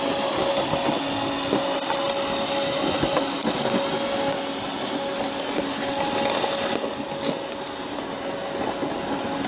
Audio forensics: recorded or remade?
recorded